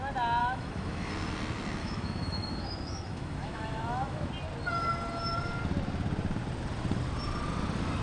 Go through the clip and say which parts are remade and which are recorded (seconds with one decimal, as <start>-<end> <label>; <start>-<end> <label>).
0.0-0.4 recorded; 0.4-1.1 remade; 1.1-1.8 recorded; 1.8-4.3 remade; 4.3-8.0 recorded